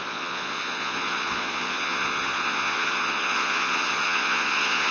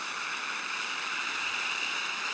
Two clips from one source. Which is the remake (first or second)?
first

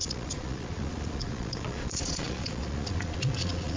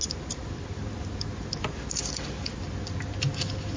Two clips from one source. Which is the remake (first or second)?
first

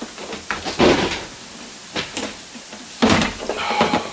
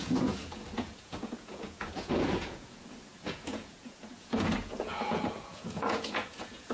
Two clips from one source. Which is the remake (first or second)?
second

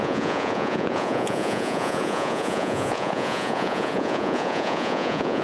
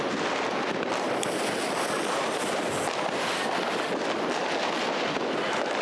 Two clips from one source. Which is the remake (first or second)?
first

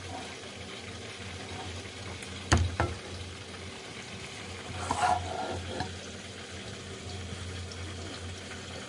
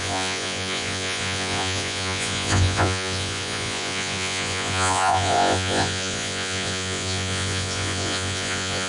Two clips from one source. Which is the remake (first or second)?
second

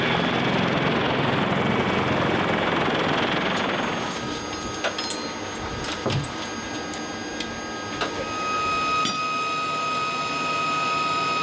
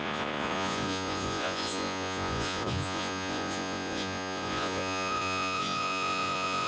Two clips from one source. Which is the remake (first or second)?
second